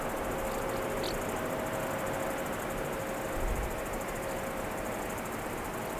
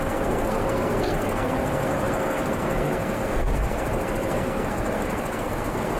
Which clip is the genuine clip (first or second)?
first